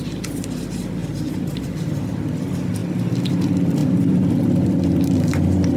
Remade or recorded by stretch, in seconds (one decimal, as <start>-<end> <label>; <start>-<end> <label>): 0.0-1.0 recorded; 1.0-1.9 remade; 1.9-2.8 recorded; 2.8-3.3 remade; 3.3-3.8 recorded; 3.8-4.3 remade; 4.3-5.8 recorded